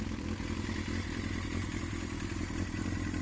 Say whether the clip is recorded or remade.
remade